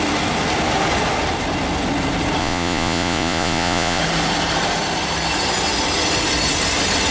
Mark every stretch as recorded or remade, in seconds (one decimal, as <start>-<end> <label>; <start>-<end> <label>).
0.0-2.4 recorded; 2.4-4.0 remade; 4.0-7.1 recorded